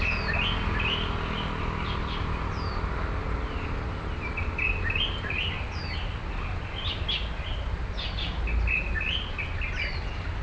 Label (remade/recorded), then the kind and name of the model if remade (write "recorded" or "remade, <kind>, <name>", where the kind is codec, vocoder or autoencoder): recorded